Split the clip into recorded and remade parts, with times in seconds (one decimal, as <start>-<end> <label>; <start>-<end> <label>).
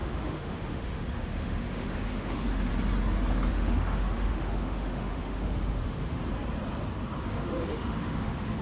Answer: 0.0-2.7 remade; 2.7-3.5 recorded; 3.5-6.2 remade; 6.2-7.2 recorded; 7.2-8.6 remade